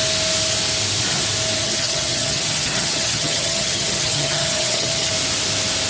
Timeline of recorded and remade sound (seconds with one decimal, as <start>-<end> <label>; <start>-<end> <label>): 0.0-1.6 recorded; 1.6-5.1 remade; 5.1-5.9 recorded